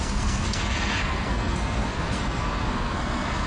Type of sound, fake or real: fake